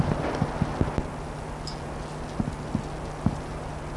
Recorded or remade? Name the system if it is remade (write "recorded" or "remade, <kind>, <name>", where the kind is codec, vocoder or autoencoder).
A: recorded